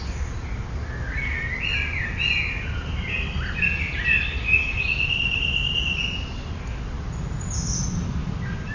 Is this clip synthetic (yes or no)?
no